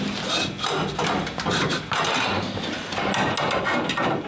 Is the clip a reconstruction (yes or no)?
no